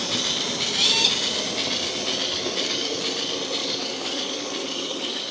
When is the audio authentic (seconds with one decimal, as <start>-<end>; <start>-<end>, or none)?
0.0-2.4; 3.0-3.6